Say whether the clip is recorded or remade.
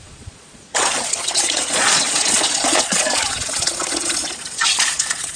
remade